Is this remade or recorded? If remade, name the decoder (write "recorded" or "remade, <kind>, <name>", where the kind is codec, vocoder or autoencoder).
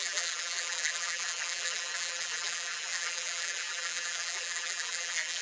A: remade, vocoder, BigVGAN v2